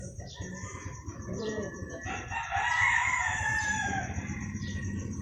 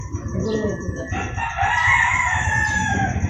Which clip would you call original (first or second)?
second